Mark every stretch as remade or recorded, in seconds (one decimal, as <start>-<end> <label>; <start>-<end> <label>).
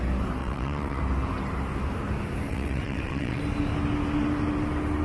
0.0-0.4 recorded; 0.4-1.0 remade; 1.0-2.5 recorded; 2.5-3.4 remade; 3.4-5.0 recorded